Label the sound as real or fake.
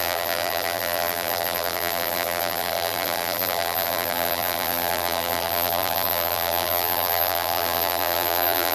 fake